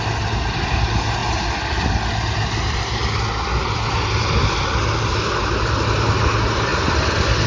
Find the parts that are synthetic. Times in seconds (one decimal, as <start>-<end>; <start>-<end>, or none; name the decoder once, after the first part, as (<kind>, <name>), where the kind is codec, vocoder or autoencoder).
none